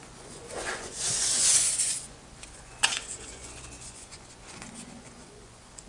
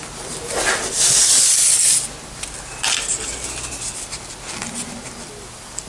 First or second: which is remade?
first